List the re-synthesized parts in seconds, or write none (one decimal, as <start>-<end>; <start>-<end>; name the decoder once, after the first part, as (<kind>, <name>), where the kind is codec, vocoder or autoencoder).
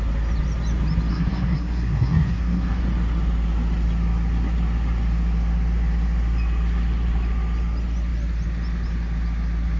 1.1-2.8 (codec, SNAC)